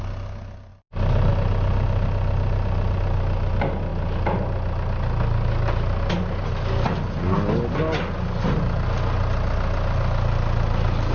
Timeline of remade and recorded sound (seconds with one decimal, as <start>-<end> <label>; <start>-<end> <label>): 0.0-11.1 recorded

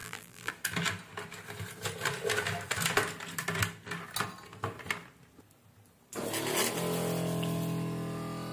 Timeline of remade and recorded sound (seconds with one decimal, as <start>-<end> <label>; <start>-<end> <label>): 0.0-0.5 remade; 0.5-8.5 recorded

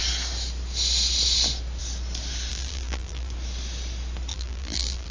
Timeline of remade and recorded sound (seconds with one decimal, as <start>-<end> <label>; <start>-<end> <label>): 0.0-2.5 recorded; 2.5-3.3 remade; 3.3-4.3 recorded; 4.3-5.1 remade